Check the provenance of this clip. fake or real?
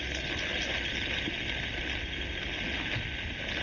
real